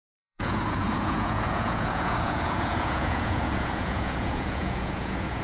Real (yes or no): no